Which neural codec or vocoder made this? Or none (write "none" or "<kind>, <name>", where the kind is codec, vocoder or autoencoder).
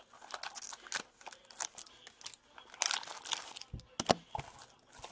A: none